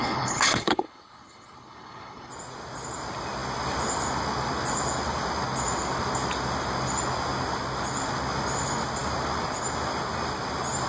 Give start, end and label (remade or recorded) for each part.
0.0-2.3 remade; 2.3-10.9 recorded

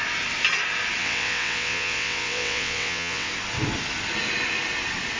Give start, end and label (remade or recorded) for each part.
0.0-1.0 recorded; 1.0-3.3 remade; 3.3-5.2 recorded

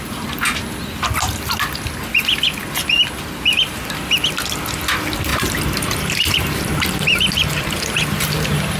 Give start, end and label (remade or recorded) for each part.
0.0-5.3 recorded; 5.3-8.8 remade

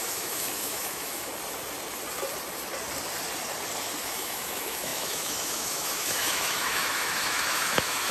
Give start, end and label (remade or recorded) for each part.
0.0-1.3 remade; 1.3-4.0 recorded; 4.0-8.1 remade